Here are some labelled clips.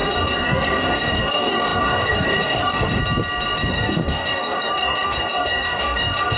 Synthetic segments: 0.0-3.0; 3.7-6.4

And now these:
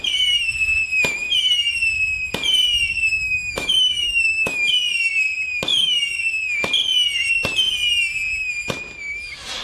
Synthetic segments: 3.1-4.7; 5.7-6.2

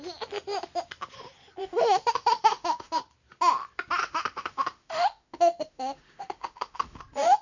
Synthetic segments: 1.6-3.0; 4.0-7.0

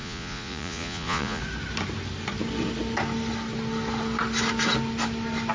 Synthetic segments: 0.0-1.4

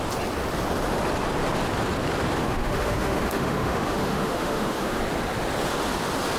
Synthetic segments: 2.4-5.0

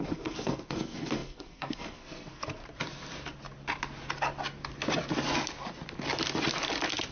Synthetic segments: 0.0-2.6

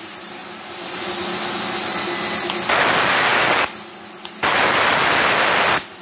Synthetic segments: none

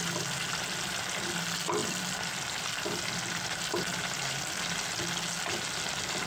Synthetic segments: none